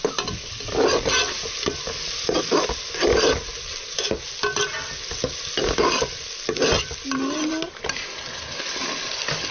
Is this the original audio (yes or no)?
yes